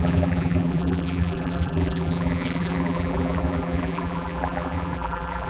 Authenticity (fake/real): fake